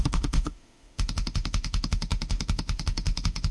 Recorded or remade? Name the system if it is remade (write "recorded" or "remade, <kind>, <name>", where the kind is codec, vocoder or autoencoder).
remade, autoencoder, DAC-VAE